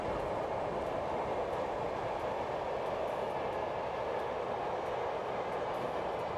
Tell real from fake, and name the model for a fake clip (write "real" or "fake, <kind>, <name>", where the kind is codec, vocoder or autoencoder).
real